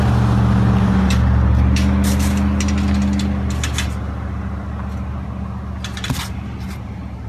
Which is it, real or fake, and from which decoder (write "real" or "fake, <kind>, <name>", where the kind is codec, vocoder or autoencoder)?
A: real